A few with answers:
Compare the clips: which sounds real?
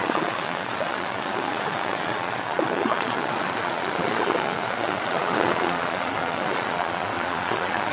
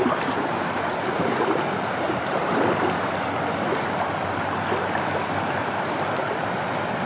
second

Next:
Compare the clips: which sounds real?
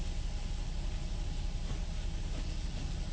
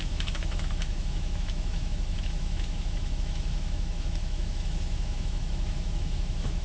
first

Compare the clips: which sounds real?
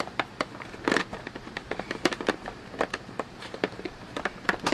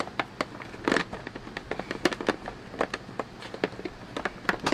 second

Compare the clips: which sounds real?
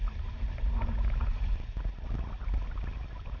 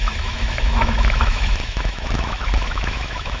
first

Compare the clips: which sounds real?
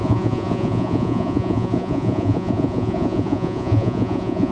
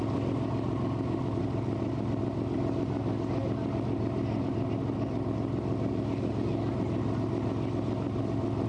second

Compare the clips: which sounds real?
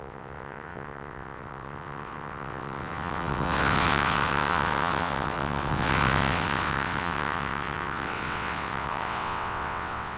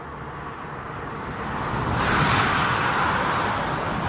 second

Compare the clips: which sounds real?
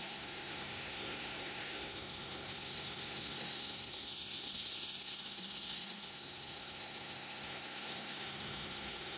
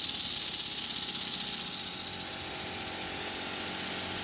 second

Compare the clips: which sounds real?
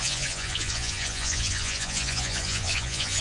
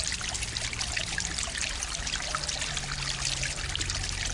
second